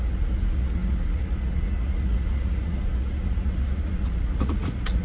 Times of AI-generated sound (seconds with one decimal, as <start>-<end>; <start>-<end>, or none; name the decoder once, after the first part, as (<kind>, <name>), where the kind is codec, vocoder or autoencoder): 0.0-5.0 (vocoder, Vocos)